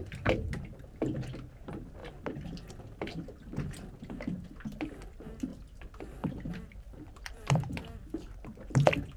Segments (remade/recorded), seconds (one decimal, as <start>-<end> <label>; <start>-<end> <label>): 0.0-5.5 recorded; 5.5-9.2 remade